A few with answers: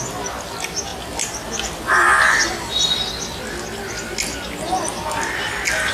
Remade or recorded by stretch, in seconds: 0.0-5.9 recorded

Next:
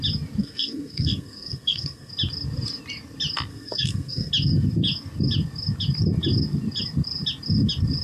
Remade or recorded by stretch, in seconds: 0.0-0.4 recorded; 0.4-2.1 remade; 2.1-3.5 recorded; 3.5-4.3 remade; 4.3-8.0 recorded

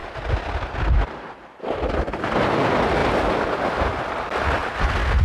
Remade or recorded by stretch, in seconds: 0.0-5.2 recorded

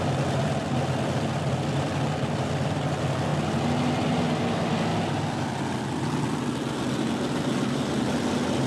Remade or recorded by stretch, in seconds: 0.0-8.7 recorded

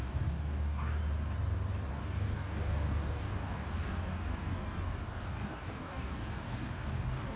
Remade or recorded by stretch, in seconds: 0.0-1.0 remade; 1.0-1.9 recorded; 1.9-7.4 remade

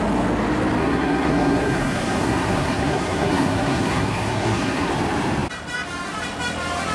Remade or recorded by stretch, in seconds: 0.0-0.8 recorded; 0.8-4.9 remade; 4.9-6.9 recorded